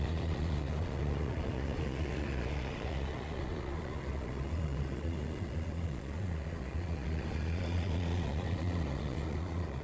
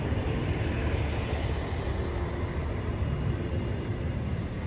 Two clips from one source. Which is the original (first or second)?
second